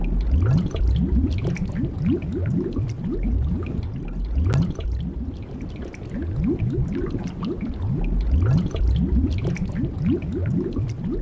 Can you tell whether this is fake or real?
real